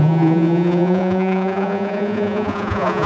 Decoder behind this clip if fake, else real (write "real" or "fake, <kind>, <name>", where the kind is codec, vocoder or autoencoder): fake, vocoder, Vocos